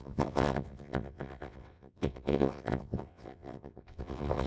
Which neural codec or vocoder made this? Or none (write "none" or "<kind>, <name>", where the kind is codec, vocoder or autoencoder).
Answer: vocoder, WaveNeXt